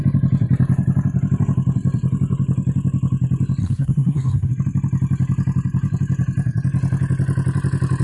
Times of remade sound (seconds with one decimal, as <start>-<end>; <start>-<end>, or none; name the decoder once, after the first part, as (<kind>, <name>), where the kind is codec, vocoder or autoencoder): 3.6-4.5 (codec, SNAC)